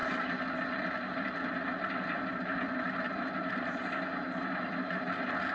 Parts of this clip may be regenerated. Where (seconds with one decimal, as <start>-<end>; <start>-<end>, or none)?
none